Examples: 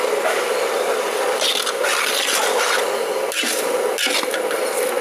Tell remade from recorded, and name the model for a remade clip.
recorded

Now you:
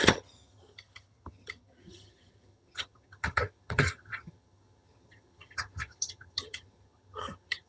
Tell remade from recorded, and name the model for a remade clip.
remade, vocoder, HiFi-GAN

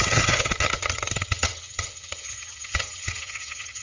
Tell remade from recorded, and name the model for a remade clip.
remade, vocoder, HiFi-GAN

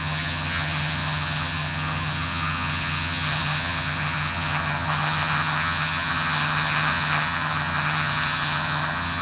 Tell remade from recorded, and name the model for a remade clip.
remade, vocoder, HiFi-GAN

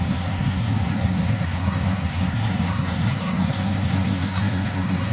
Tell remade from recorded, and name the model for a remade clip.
remade, codec, SNAC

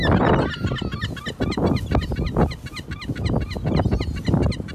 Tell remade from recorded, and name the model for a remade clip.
recorded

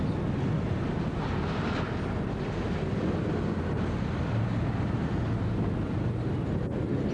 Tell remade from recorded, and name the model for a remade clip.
recorded